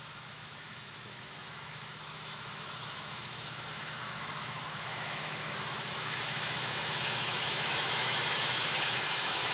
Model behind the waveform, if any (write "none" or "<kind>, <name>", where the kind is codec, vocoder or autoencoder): autoencoder, DAC-VAE